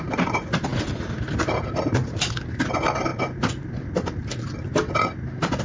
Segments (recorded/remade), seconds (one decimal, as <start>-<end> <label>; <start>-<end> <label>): 0.0-5.6 recorded